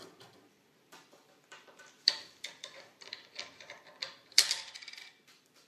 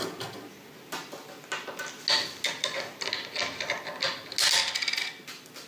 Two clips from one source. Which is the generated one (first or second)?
first